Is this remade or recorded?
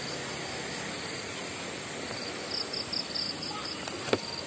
recorded